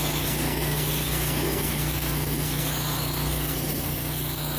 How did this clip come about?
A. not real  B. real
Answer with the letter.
A